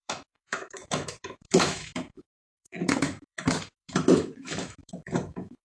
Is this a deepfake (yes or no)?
yes